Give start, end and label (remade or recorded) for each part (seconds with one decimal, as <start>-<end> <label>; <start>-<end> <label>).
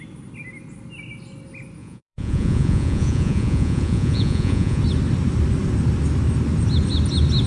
0.0-1.8 recorded; 1.8-4.8 remade; 4.8-7.5 recorded